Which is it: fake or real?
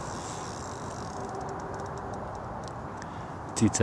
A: real